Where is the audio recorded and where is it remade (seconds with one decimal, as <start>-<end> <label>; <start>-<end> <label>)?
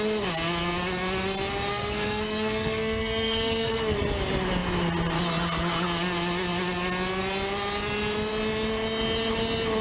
0.0-1.7 recorded; 1.7-4.0 remade; 4.0-9.8 recorded